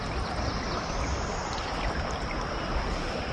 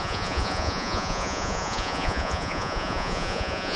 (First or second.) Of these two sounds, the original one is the first